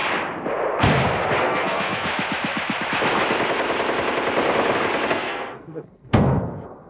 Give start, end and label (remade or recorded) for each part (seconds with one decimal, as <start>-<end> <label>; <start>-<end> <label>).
0.0-1.4 recorded; 1.4-2.1 remade; 2.1-5.1 recorded; 5.1-6.9 remade